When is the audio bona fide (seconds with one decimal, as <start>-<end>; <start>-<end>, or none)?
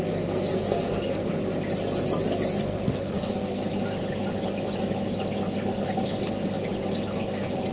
1.3-2.6; 3.6-7.7